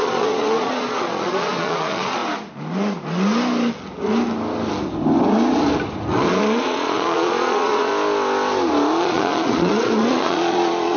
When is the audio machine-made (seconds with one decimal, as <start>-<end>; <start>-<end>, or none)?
0.0-2.2; 6.4-7.9; 9.0-11.0